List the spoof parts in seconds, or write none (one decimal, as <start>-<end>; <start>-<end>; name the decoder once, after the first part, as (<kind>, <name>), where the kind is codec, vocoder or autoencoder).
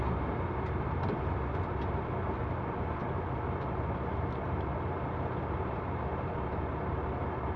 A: none